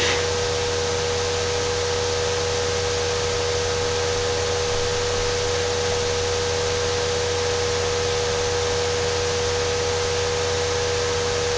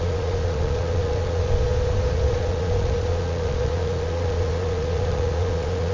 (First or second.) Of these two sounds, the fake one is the second